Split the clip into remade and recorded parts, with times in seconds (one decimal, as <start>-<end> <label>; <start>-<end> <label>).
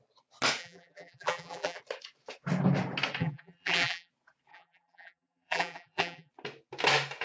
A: 0.0-0.6 recorded; 0.6-1.8 remade; 1.8-3.2 recorded; 3.2-4.1 remade; 4.1-4.5 recorded; 4.5-6.3 remade; 6.3-7.2 recorded